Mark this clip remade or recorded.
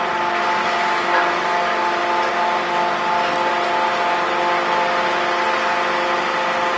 recorded